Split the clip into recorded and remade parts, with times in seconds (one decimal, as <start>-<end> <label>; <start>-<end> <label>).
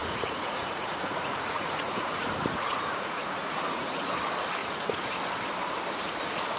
0.0-4.0 remade; 4.0-4.6 recorded; 4.6-5.1 remade; 5.1-6.6 recorded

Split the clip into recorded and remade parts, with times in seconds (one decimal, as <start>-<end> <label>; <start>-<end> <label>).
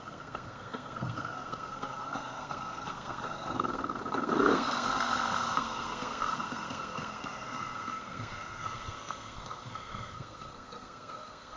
0.0-11.6 remade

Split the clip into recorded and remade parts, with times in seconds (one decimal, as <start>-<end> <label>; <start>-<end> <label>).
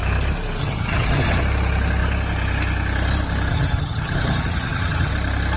0.0-0.6 recorded; 0.6-1.4 remade; 1.4-3.5 recorded; 3.5-5.1 remade; 5.1-5.6 recorded